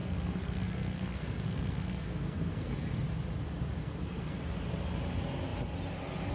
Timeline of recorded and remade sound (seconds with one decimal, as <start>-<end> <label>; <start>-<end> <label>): 0.0-2.8 remade; 2.8-3.8 recorded; 3.8-4.4 remade; 4.4-6.3 recorded